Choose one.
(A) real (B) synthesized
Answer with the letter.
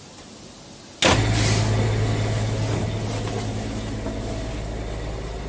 A